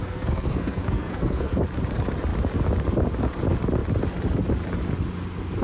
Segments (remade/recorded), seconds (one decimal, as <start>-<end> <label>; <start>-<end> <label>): 0.0-1.6 remade; 1.6-5.6 recorded